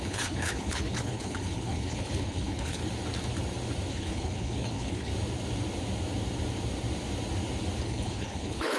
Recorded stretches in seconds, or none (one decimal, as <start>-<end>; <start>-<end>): 2.8-3.9; 5.1-7.8